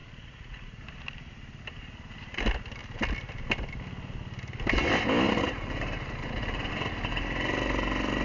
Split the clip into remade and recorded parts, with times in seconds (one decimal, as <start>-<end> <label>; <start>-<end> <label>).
0.0-0.8 remade; 0.8-8.2 recorded